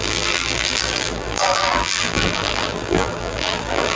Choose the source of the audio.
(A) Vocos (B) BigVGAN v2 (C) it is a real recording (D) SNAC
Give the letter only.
B